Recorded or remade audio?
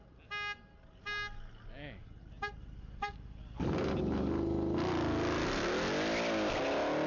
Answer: recorded